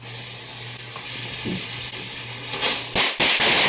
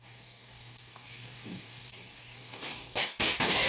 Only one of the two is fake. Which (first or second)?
second